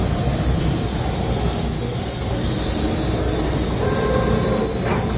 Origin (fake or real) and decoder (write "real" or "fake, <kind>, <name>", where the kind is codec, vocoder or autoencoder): real